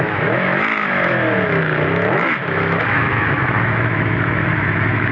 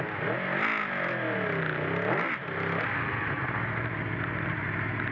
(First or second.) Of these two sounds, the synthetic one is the first